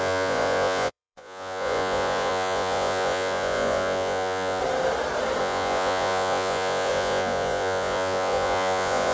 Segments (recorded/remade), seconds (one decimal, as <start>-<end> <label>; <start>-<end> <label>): 0.0-4.6 remade; 4.6-5.4 recorded; 5.4-9.1 remade